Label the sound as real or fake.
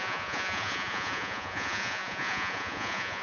fake